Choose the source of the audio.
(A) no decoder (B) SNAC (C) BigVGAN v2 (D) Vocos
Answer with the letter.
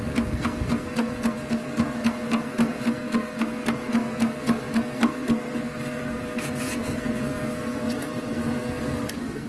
B